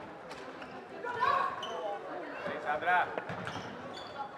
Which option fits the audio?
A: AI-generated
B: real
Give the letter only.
B